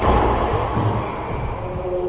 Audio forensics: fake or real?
real